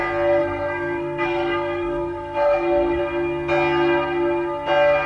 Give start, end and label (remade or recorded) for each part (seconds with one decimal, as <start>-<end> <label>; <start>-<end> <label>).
0.0-0.4 recorded; 0.4-3.0 remade; 3.0-5.1 recorded